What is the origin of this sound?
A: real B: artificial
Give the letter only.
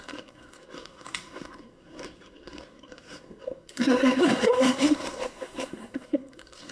B